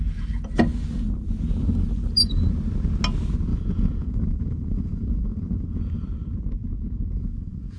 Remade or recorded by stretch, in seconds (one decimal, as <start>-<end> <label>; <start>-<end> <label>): 0.0-3.5 recorded; 3.5-5.8 remade; 5.8-6.6 recorded; 6.6-7.8 remade